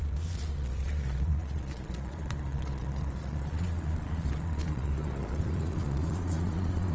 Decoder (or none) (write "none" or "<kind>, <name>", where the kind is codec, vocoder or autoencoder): vocoder, Vocos